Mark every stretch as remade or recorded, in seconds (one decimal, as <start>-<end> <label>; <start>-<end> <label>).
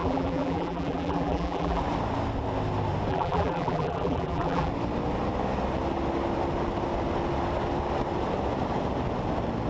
0.0-1.8 remade; 1.8-3.1 recorded; 3.1-4.7 remade; 4.7-9.7 recorded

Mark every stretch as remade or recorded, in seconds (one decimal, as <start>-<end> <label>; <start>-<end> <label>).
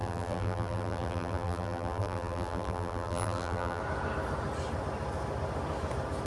0.0-3.8 remade; 3.8-6.3 recorded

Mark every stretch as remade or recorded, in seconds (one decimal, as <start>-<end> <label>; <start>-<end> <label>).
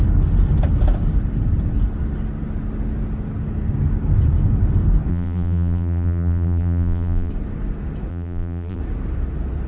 0.0-5.1 recorded; 5.1-7.3 remade; 7.3-8.1 recorded; 8.1-8.8 remade; 8.8-9.7 recorded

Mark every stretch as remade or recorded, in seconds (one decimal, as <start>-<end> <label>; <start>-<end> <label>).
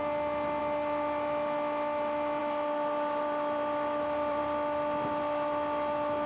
0.0-2.4 recorded; 2.4-4.4 remade; 4.4-6.3 recorded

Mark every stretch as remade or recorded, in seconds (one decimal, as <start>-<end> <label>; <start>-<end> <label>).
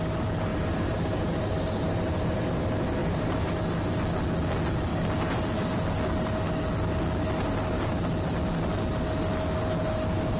0.0-0.5 recorded; 0.5-2.6 remade; 2.6-3.0 recorded; 3.0-3.5 remade; 3.5-10.4 recorded